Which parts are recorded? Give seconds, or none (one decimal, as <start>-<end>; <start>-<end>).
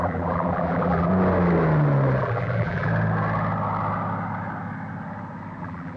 1.1-2.2; 2.9-5.6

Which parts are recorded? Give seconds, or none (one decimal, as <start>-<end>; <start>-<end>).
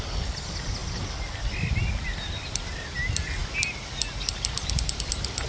0.0-5.5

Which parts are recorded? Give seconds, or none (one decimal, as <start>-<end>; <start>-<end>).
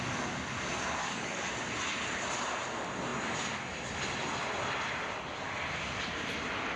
0.0-1.0; 1.5-6.8